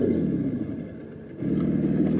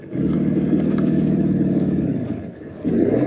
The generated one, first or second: second